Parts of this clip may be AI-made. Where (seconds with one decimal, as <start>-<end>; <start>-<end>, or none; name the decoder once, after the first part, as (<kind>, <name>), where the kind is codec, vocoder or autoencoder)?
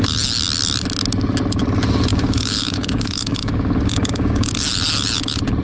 2.1-4.5 (codec, DAC)